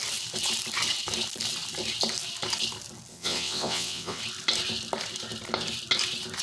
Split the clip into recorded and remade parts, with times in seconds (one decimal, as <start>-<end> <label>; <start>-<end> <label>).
0.0-3.1 recorded; 3.1-4.2 remade; 4.2-6.4 recorded

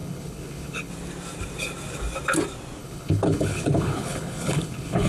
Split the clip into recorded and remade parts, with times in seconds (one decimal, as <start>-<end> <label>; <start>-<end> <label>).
0.0-0.9 remade; 0.9-2.8 recorded; 2.8-5.1 remade

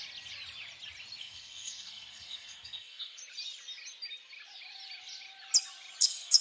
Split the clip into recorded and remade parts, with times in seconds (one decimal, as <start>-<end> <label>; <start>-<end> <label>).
0.0-1.2 recorded; 1.2-3.2 remade; 3.2-6.0 recorded; 6.0-6.4 remade

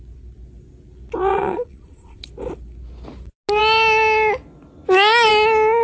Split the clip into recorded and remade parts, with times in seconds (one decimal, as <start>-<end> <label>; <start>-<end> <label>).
0.0-1.3 recorded; 1.3-2.2 remade; 2.2-5.8 recorded

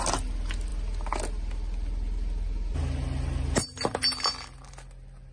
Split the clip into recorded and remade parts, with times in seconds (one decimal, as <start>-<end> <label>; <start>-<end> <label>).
0.0-5.3 recorded

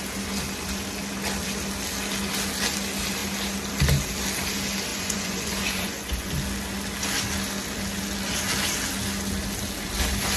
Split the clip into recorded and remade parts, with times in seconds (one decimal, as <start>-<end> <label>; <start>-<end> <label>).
0.0-4.9 recorded; 4.9-6.3 remade; 6.3-10.4 recorded